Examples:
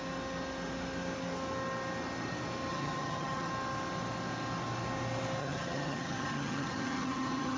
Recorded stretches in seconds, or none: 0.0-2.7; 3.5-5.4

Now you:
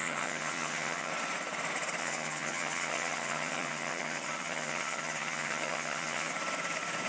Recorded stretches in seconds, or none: 1.1-2.0; 6.3-7.1

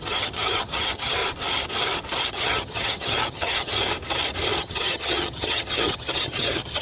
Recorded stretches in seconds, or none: 1.2-2.3; 3.7-4.6

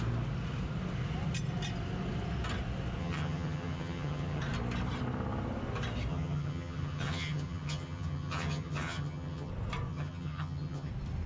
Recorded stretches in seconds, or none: 0.0-3.0; 4.4-6.1; 9.5-9.9; 10.9-11.3

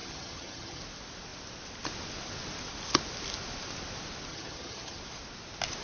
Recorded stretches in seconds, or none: 0.8-4.3; 5.0-5.8

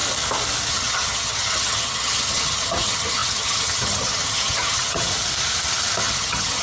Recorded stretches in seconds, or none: 0.0-0.7; 5.1-6.0

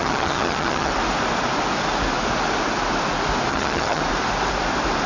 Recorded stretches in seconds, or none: 0.9-3.5; 4.0-5.1

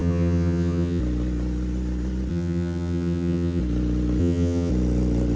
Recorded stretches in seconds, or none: 1.0-2.3; 3.6-4.2; 4.7-5.4